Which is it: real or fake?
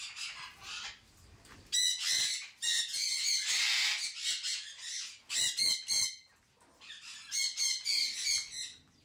real